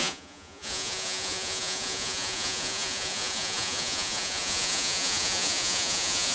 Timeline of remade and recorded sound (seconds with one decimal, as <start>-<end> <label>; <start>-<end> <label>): 0.0-6.3 remade